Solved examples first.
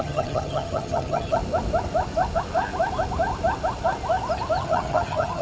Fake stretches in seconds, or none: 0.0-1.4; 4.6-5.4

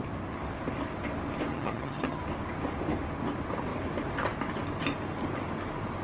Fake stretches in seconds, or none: 1.5-2.2

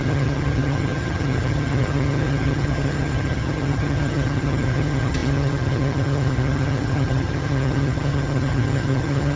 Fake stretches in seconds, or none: 0.0-9.4

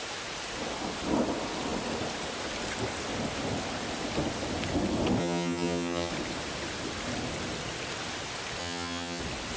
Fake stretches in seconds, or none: 5.2-6.1; 8.6-9.2

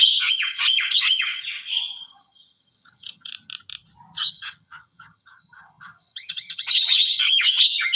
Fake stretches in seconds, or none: 0.0-3.3; 4.3-8.0